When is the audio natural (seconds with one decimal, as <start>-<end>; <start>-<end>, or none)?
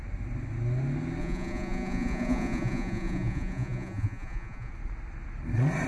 0.0-1.2; 4.7-5.9